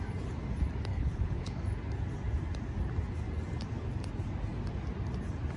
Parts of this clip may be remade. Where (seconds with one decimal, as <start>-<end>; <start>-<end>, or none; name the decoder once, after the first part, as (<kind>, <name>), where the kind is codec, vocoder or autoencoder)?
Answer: 0.9-1.6 (codec, HILCodec)